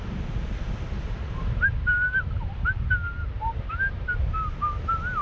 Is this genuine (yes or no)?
yes